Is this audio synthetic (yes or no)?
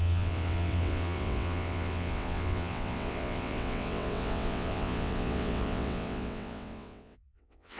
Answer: yes